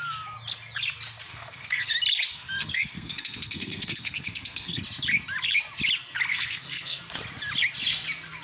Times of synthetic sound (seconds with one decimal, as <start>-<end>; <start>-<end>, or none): 1.3-1.9; 2.3-4.8; 6.3-7.0